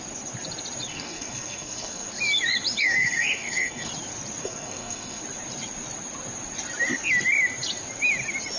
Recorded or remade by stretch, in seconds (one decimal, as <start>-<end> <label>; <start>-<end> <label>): 0.0-0.9 recorded; 0.9-2.1 remade; 2.1-2.8 recorded; 2.8-3.9 remade; 3.9-4.4 recorded; 4.4-5.2 remade; 5.2-8.6 recorded